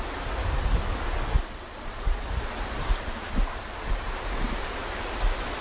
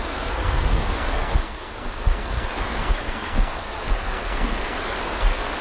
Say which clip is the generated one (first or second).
second